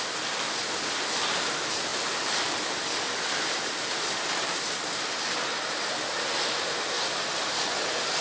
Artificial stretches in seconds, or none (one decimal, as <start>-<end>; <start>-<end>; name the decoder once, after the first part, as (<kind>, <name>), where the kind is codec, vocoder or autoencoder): 1.9-3.6 (vocoder, BigVGAN v2)